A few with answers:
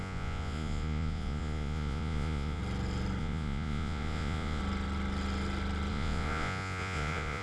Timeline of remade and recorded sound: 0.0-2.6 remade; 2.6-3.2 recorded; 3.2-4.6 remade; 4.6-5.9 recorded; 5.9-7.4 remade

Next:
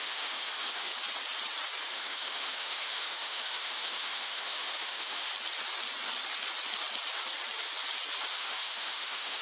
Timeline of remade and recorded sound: 0.0-0.9 remade; 0.9-1.9 recorded; 1.9-5.3 remade; 5.3-8.3 recorded; 8.3-9.4 remade

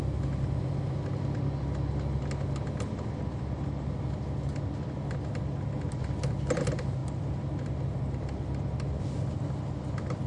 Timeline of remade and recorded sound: 0.0-10.3 recorded

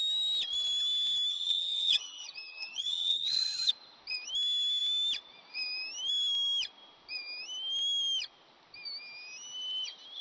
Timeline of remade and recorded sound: 0.0-1.3 recorded; 1.3-3.7 remade; 3.7-10.2 recorded

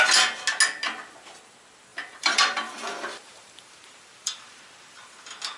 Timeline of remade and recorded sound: 0.0-1.9 recorded; 1.9-4.6 remade; 4.6-5.6 recorded

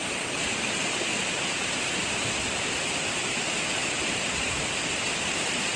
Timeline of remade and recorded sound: 0.0-5.8 remade